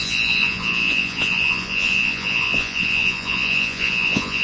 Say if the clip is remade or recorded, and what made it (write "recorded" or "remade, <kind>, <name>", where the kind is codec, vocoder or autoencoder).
remade, vocoder, Vocos